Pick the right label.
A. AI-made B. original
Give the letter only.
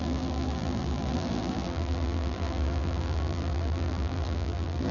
A